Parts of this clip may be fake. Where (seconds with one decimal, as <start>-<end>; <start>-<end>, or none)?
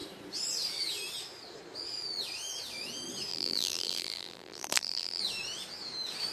3.3-5.2